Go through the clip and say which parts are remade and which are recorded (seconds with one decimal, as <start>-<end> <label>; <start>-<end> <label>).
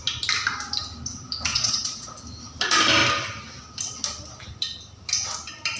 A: 0.0-1.5 recorded; 1.5-2.2 remade; 2.2-5.8 recorded